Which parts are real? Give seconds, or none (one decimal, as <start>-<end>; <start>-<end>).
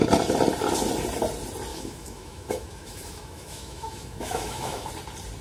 0.0-1.7; 4.9-5.4